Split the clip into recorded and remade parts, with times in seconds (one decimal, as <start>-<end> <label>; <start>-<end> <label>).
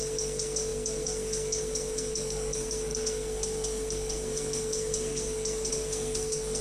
0.0-6.6 remade